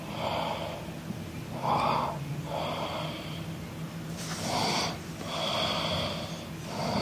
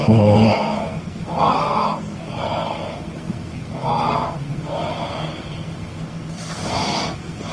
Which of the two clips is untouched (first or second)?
first